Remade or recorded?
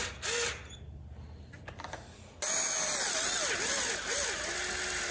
recorded